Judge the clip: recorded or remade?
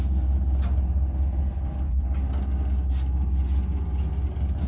recorded